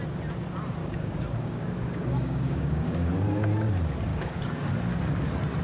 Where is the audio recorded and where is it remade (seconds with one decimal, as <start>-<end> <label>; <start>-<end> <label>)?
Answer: 0.0-0.8 recorded; 0.8-3.1 remade; 3.1-4.1 recorded; 4.1-4.7 remade; 4.7-5.6 recorded